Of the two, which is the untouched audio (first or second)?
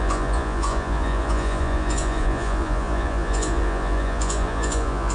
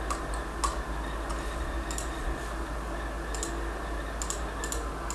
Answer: second